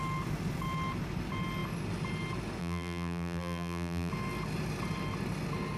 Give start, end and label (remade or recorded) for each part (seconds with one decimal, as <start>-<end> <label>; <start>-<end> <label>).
0.0-2.6 recorded; 2.6-4.1 remade; 4.1-5.8 recorded